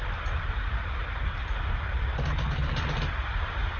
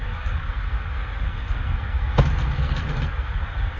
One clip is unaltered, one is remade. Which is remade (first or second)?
second